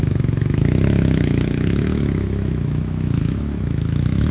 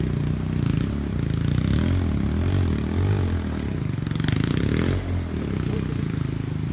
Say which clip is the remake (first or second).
first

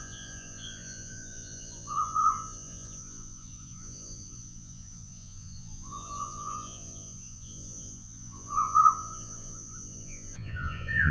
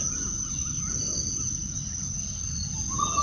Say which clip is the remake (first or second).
first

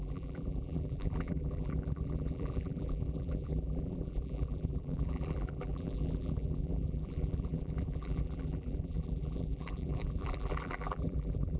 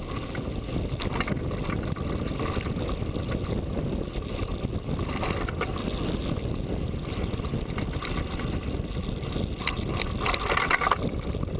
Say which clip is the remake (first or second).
first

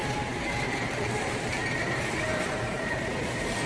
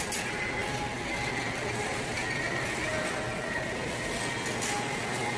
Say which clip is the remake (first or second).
first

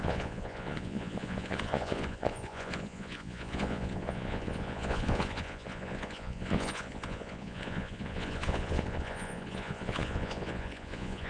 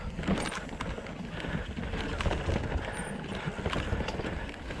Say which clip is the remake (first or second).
first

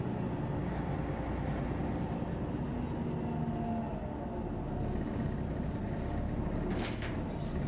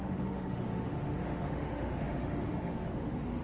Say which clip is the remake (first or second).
second